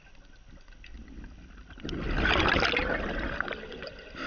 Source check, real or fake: real